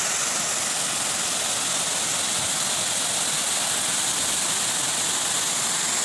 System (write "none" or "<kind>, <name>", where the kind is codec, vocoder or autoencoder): none